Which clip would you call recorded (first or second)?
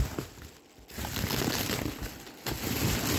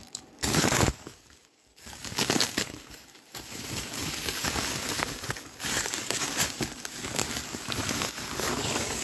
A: first